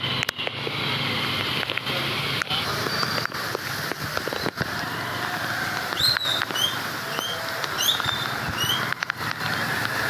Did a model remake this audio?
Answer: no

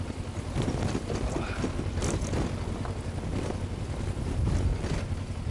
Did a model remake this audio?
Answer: no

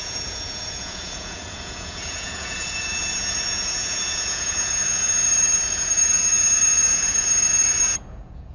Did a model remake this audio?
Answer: yes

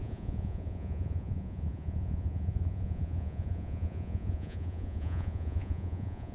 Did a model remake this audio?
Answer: yes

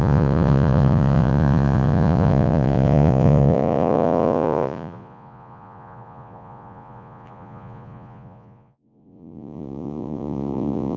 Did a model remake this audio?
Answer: yes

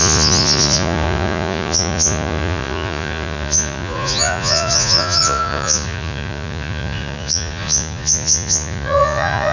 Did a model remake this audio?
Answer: yes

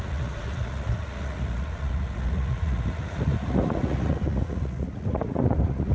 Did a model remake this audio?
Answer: yes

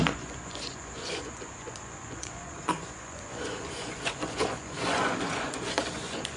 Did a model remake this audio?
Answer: yes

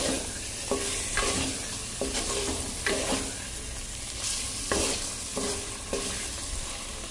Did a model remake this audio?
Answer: no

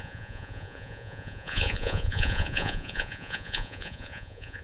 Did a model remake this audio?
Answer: yes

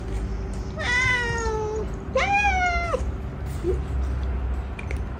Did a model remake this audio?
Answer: no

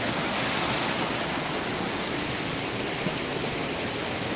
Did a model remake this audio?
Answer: no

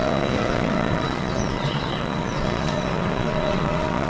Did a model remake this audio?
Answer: yes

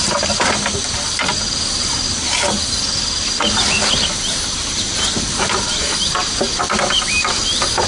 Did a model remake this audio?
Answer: no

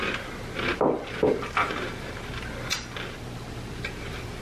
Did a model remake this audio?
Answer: no